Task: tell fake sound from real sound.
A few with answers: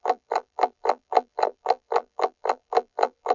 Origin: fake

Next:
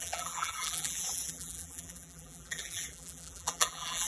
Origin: fake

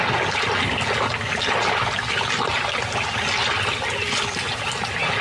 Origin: real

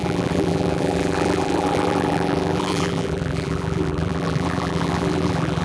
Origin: fake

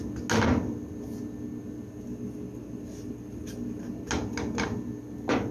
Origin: real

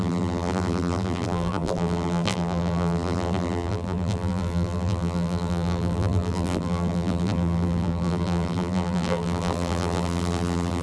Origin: fake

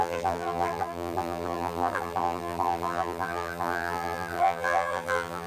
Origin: fake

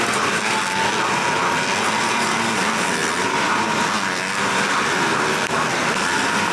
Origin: real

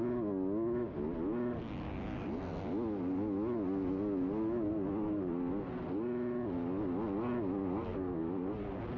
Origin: real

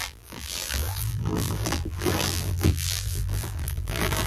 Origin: fake